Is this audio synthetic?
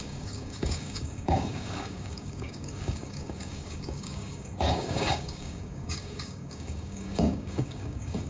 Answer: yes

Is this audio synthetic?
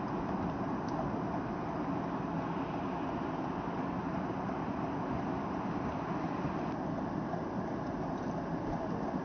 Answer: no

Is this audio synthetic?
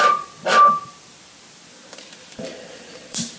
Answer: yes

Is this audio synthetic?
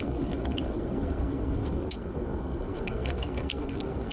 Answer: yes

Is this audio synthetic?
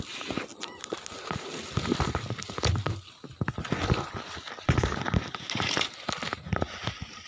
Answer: no